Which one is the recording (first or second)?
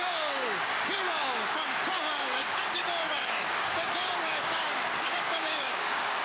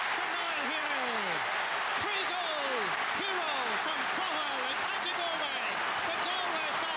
second